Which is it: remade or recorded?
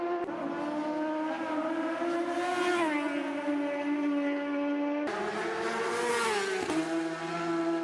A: recorded